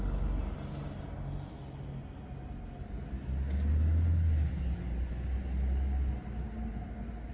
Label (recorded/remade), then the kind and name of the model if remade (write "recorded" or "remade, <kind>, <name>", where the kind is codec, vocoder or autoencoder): recorded